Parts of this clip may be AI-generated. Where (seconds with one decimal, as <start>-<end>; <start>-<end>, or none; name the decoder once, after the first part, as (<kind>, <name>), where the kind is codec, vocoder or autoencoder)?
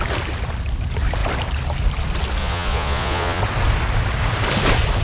2.4-3.4 (vocoder, Vocos)